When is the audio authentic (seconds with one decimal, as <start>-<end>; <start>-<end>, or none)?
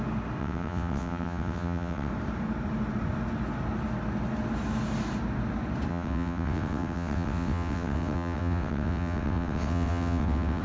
0.0-0.4; 2.1-5.9